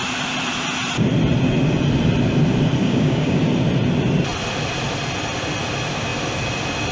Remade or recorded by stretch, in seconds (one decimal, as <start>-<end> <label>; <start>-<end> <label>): 0.0-2.8 recorded; 2.8-3.4 remade; 3.4-6.9 recorded